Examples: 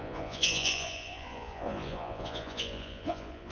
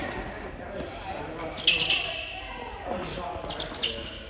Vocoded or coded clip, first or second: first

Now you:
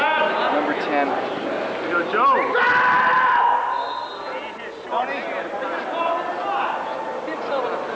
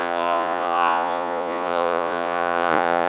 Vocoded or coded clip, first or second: second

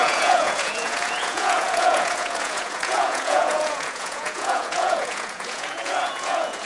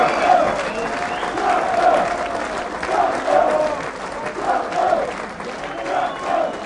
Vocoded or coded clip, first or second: first